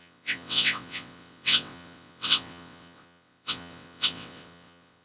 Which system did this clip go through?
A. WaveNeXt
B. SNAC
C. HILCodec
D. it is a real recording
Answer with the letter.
A